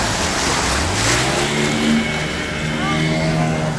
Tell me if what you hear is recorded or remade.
recorded